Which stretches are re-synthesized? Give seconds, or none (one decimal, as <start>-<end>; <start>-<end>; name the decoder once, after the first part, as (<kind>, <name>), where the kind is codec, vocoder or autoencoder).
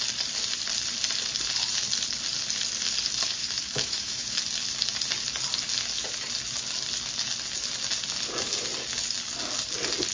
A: 3.4-4.4 (autoencoder, DAC-VAE)